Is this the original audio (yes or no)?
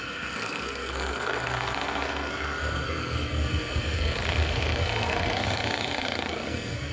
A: no